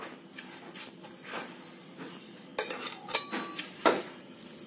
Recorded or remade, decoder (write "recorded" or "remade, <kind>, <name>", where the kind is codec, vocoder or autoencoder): recorded